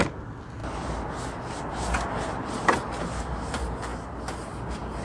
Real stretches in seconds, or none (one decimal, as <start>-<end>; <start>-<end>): 0.0-5.0

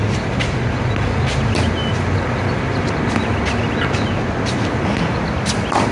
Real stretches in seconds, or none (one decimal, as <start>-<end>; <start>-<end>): 0.0-5.9

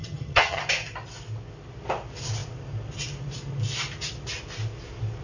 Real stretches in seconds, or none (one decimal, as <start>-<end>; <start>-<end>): 0.6-5.2